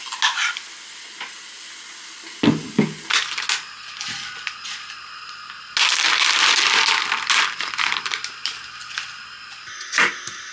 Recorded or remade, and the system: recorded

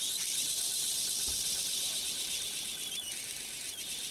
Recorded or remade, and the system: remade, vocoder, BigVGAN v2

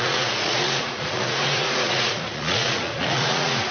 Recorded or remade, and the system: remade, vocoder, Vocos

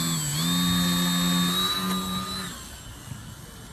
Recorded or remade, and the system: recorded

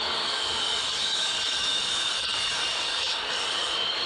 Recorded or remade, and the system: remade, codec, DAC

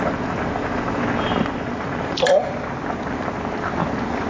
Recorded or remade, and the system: recorded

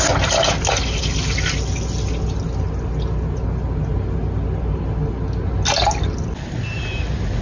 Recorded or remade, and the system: recorded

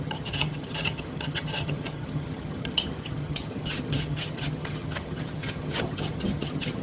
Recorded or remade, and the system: remade, vocoder, HiFi-GAN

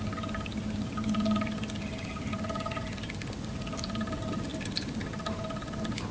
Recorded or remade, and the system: recorded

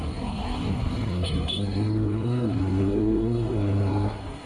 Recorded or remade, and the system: remade, codec, SNAC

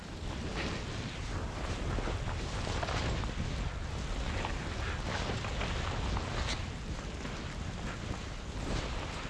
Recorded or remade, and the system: recorded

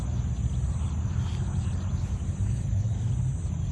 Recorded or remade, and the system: recorded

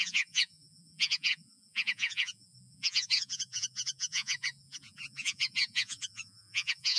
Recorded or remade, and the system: remade, vocoder, Vocos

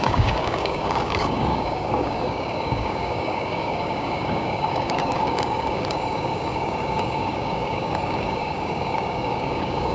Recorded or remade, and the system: remade, codec, DAC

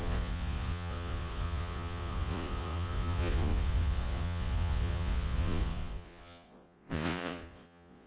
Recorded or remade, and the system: remade, vocoder, Vocos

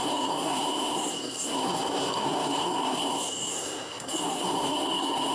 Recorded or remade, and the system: remade, codec, SNAC